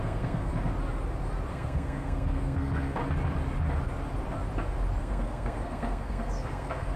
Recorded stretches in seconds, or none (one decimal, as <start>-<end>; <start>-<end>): 0.5-1.5; 3.0-5.0